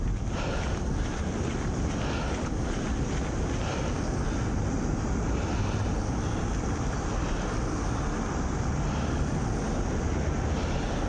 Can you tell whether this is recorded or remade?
recorded